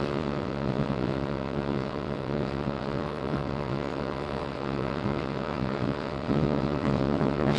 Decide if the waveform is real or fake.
fake